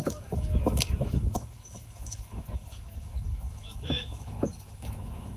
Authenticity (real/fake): fake